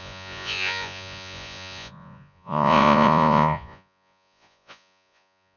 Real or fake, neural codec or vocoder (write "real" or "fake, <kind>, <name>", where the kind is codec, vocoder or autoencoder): fake, vocoder, Vocos